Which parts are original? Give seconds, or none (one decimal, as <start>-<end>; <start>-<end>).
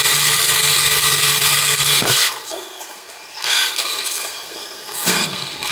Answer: none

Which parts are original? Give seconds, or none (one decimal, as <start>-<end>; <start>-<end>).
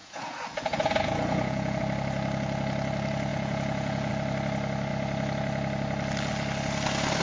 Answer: 1.8-3.3; 4.1-7.2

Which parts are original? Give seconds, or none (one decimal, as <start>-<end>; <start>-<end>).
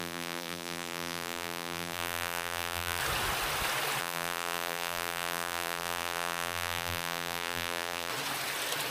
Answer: 3.0-4.0; 8.1-8.9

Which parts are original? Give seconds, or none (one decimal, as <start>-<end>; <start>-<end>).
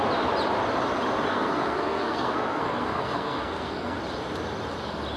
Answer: 0.0-1.3; 4.0-5.2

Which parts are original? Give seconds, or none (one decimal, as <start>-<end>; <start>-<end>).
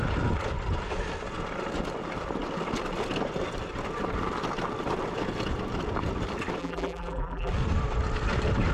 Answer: 0.0-6.6; 7.5-8.7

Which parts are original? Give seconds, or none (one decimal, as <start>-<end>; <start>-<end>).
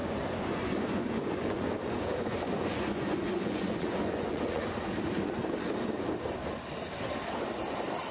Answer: 4.9-8.1